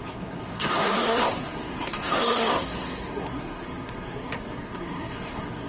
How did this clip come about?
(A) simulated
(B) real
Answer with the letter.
A